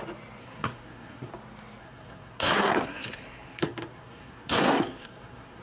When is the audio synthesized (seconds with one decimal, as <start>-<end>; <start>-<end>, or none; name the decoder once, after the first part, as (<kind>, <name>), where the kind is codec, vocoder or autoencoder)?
0.4-1.3 (codec, SNAC); 1.8-5.6